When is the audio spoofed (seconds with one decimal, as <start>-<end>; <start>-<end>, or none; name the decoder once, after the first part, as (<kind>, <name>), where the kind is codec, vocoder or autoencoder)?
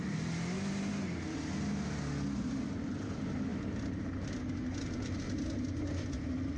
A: 3.5-4.3 (vocoder, BigVGAN v2)